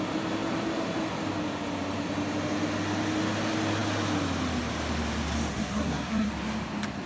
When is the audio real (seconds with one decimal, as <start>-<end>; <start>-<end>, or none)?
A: 0.0-5.5; 6.3-7.1